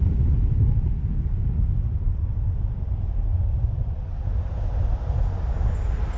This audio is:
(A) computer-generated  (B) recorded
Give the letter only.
B